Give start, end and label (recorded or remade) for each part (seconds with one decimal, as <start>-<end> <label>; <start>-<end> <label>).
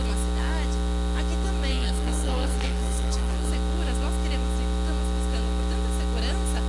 0.0-1.7 recorded; 1.7-3.5 remade; 3.5-6.7 recorded